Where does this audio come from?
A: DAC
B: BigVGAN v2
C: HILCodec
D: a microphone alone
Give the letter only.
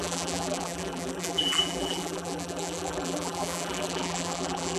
B